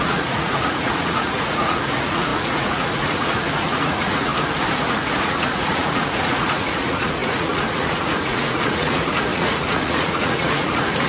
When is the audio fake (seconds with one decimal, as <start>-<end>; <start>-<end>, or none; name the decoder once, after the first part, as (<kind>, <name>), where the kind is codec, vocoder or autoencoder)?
0.0-4.3 (vocoder, Vocos); 4.9-11.1

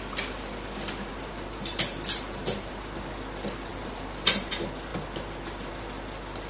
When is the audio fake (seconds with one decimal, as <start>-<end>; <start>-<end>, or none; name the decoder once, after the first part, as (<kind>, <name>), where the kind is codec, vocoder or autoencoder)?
1.1-2.7 (vocoder, BigVGAN v2); 3.7-4.5

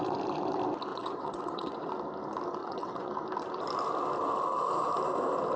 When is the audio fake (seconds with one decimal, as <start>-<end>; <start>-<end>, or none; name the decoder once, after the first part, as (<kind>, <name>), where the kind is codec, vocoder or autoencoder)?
0.9-1.9 (vocoder, WaveNeXt); 2.6-3.1